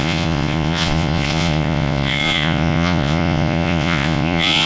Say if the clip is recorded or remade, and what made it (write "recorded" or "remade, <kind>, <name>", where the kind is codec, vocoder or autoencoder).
remade, vocoder, Vocos